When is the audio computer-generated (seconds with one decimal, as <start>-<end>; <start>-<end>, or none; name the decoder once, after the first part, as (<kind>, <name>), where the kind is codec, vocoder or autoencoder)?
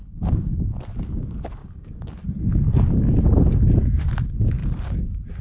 0.0-0.7 (codec, DAC); 1.6-2.2; 4.6-5.4